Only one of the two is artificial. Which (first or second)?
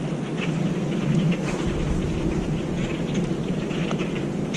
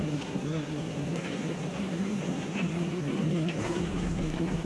second